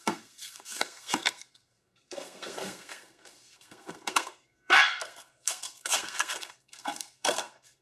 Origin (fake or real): fake